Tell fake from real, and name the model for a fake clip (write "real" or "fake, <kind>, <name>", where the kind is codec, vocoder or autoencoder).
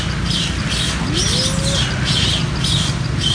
real